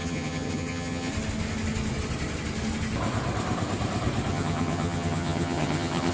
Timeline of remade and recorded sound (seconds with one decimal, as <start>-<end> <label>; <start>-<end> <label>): 0.0-1.1 remade; 1.1-4.3 recorded; 4.3-6.1 remade